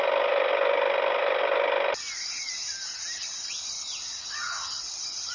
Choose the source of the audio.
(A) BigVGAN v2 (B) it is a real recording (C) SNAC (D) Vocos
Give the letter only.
B